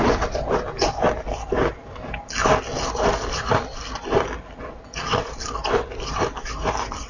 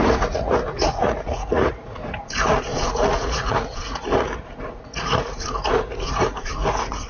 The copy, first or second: second